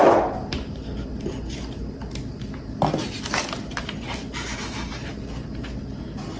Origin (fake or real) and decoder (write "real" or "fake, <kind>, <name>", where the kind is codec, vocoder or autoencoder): real